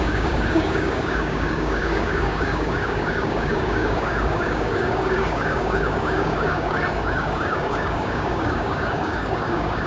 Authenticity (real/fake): fake